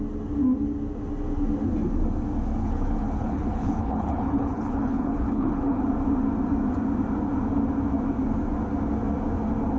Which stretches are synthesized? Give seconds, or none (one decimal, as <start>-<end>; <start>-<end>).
2.6-5.8